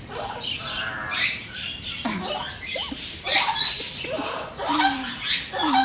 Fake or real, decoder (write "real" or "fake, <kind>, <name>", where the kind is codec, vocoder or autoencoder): fake, vocoder, BigVGAN v2